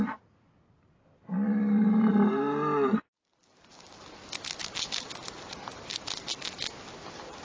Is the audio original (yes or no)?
yes